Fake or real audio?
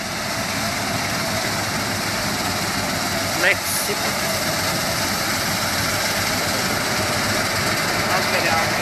real